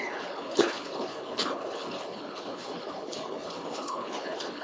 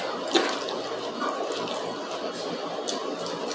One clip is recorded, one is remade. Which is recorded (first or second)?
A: second